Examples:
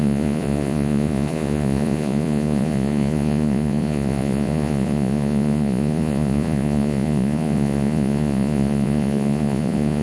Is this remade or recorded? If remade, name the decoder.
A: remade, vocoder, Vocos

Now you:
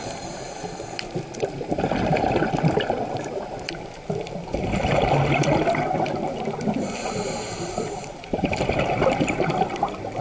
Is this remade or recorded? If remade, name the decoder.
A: remade, vocoder, BigVGAN v2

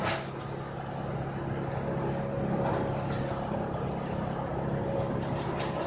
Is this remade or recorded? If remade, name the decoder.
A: recorded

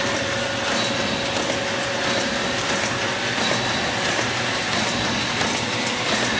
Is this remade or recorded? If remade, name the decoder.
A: recorded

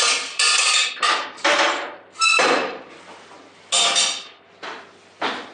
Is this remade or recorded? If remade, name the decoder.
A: recorded